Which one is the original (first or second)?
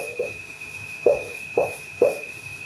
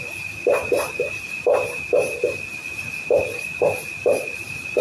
second